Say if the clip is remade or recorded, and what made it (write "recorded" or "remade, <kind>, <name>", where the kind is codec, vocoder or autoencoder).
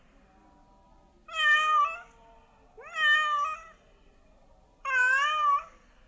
recorded